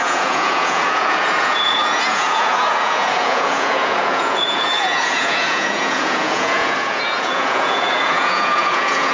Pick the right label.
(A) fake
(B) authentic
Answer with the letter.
A